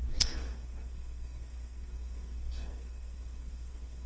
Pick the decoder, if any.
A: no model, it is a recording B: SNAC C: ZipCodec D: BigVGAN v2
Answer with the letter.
B